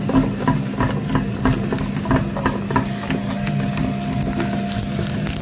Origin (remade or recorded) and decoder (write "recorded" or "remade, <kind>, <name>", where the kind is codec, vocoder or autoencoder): recorded